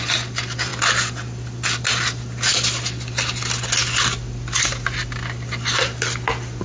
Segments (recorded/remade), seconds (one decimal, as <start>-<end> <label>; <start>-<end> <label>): 0.0-6.6 recorded

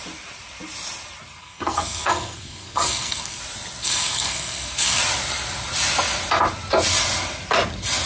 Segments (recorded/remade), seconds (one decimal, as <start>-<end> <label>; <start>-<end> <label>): 0.0-1.4 recorded; 1.4-3.4 remade; 3.4-3.8 recorded; 3.8-5.0 remade; 5.0-8.1 recorded

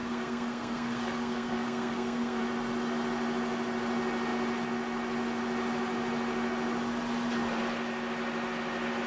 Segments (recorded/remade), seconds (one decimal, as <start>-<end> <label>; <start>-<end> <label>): 0.0-2.4 remade; 2.4-9.1 recorded

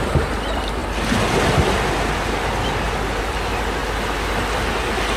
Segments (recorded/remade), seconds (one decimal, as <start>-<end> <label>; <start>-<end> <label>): 0.0-5.2 recorded